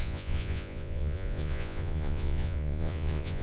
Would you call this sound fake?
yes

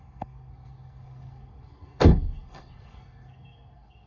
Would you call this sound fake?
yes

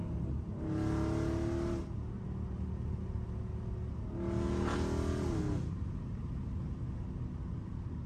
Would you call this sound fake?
no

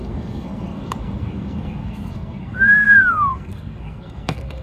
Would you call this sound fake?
yes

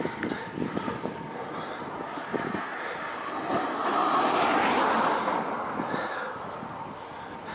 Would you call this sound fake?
no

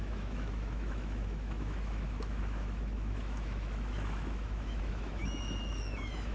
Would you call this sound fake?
yes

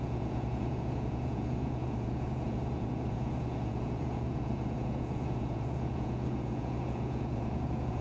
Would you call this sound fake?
yes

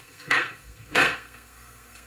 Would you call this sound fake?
yes